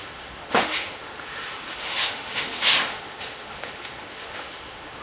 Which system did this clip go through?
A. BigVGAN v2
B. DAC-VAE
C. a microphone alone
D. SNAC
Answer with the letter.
B